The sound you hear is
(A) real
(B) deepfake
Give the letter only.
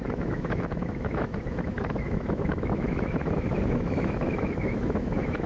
B